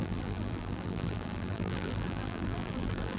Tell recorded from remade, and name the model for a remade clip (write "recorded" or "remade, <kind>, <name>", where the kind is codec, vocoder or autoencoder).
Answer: remade, vocoder, BigVGAN v2